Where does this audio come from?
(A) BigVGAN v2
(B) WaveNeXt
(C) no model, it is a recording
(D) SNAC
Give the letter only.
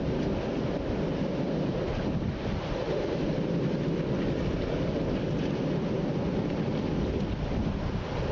C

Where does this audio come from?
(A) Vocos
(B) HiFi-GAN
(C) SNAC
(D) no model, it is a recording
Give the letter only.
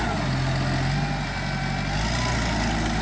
D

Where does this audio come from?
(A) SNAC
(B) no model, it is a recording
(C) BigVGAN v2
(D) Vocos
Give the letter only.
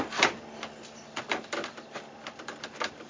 C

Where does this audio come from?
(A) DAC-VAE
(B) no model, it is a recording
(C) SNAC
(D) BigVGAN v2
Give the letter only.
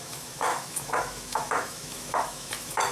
A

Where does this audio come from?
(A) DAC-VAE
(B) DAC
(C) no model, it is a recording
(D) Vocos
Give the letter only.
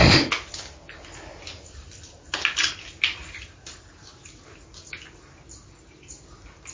C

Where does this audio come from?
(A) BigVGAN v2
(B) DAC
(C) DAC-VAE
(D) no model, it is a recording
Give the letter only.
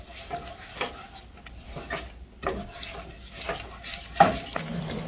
D